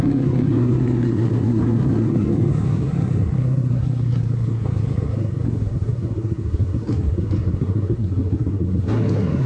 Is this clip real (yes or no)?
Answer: no